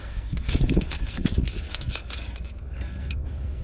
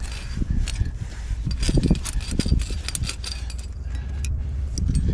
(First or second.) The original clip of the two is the second